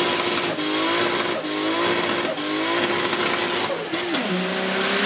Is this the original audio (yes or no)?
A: yes